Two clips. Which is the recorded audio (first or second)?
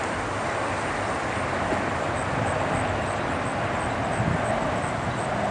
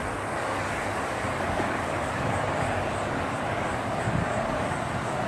first